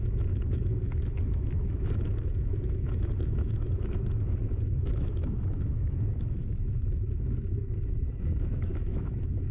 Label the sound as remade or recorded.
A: remade